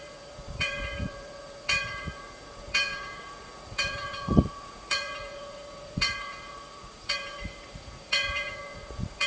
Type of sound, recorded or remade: remade